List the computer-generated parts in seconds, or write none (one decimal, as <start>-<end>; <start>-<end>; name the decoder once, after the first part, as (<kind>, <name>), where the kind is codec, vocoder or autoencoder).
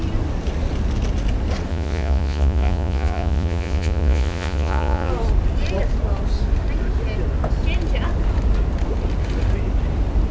1.7-5.1 (vocoder, Vocos)